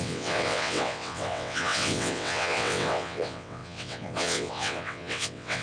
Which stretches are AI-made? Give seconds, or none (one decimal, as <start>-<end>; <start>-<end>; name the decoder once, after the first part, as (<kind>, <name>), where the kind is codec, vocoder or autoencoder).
0.0-5.6 (vocoder, WaveNeXt)